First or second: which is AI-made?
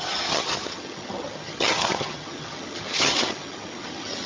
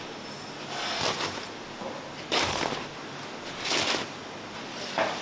first